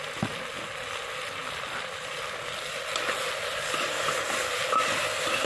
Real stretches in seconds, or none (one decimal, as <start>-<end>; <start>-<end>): 0.0-5.5